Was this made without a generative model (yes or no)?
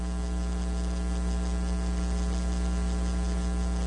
yes